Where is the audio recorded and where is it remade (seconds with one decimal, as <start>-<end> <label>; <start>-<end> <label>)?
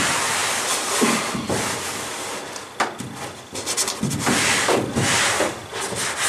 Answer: 0.0-6.3 recorded